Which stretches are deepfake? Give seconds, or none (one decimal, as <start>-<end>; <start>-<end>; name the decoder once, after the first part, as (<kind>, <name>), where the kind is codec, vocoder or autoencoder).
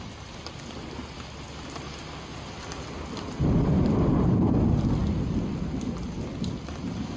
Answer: none